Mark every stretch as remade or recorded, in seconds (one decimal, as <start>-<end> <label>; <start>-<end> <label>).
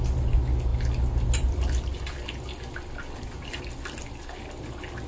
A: 0.0-5.1 recorded